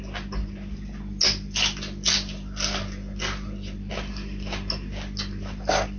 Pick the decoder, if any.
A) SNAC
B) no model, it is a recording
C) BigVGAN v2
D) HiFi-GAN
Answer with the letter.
B